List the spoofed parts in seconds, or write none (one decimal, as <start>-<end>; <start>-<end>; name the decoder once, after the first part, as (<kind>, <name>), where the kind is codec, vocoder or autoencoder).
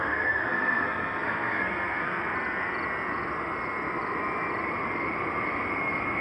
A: 0.0-2.2 (codec, SNAC)